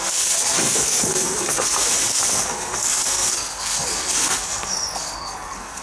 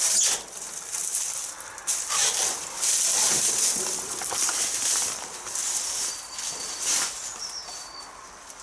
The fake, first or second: first